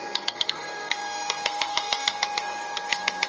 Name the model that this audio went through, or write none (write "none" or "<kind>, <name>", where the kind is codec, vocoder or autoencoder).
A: codec, SNAC